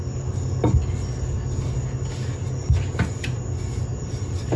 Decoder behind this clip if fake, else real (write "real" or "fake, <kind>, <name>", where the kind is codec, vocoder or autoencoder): real